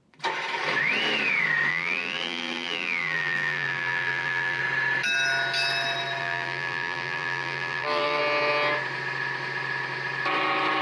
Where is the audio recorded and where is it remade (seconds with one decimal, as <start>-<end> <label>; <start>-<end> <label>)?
0.0-1.7 recorded; 1.7-4.6 remade; 4.6-6.2 recorded; 6.2-8.2 remade; 8.2-10.8 recorded